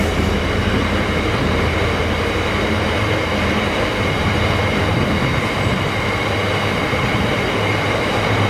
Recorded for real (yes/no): no